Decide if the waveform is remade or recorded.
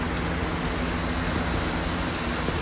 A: recorded